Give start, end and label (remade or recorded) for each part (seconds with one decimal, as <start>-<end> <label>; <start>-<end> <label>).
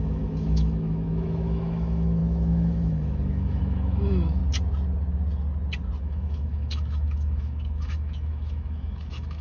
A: 0.0-4.4 remade; 4.4-6.0 recorded; 6.0-9.4 remade